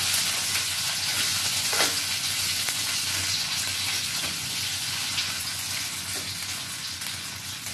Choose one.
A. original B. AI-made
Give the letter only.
B